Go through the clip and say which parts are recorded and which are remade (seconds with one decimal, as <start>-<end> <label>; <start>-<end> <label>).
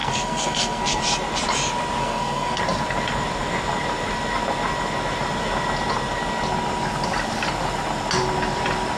0.0-1.0 remade; 1.0-2.0 recorded; 2.0-2.6 remade; 2.6-9.0 recorded